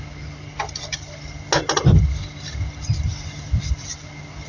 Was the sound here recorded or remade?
recorded